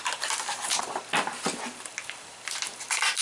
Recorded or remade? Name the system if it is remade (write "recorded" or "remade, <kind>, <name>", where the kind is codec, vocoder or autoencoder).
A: recorded